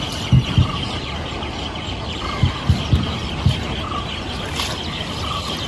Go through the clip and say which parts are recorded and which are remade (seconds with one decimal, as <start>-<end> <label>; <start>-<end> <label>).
0.0-5.7 recorded